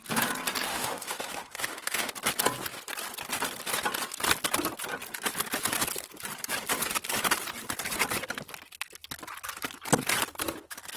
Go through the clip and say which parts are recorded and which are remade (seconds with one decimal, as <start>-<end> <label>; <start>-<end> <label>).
0.0-0.7 recorded; 0.7-2.1 remade; 2.1-11.0 recorded